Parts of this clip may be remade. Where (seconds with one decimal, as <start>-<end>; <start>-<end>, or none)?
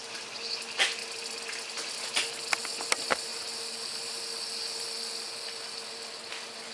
none